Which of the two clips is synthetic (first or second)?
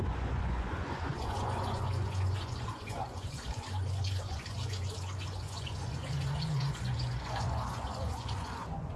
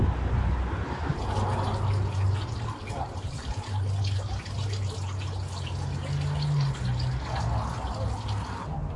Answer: first